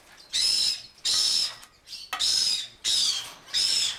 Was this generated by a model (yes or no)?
no